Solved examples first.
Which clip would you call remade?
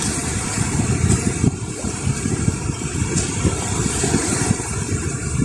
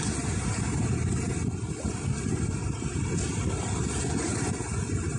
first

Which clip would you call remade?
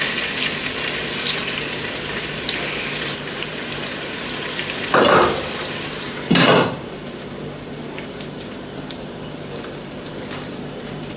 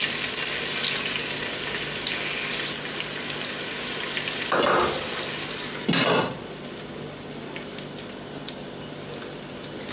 first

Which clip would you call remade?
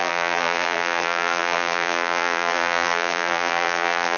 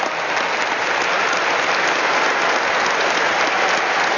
first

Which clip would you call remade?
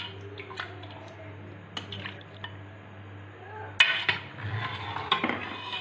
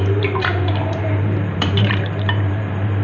second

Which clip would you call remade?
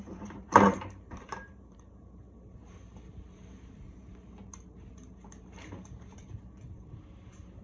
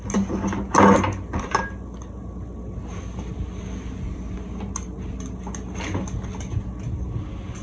first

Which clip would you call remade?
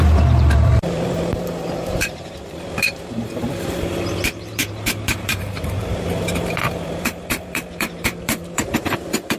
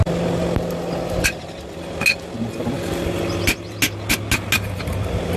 first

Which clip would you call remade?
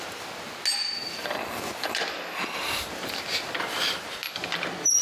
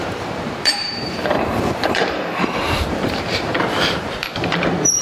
second